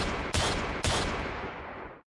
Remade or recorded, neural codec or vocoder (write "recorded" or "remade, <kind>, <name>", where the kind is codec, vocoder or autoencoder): remade, vocoder, Vocos